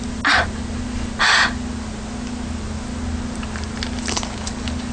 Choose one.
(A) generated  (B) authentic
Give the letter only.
B